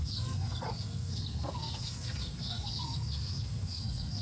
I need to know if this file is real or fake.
fake